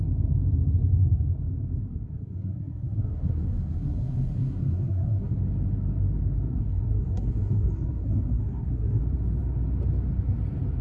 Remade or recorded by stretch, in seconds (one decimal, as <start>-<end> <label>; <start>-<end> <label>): 0.0-1.9 recorded; 1.9-5.4 remade; 5.4-6.5 recorded; 6.5-9.0 remade; 9.0-10.8 recorded